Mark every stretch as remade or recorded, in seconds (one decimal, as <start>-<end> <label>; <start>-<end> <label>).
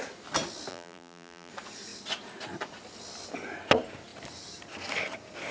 0.0-0.7 recorded; 0.7-1.5 remade; 1.5-5.5 recorded